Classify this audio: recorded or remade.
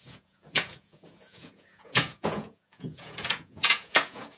remade